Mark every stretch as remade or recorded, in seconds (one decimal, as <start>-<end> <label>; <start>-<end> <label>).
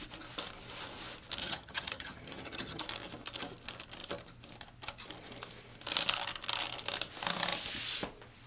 0.0-1.4 recorded; 1.4-2.8 remade; 2.8-8.5 recorded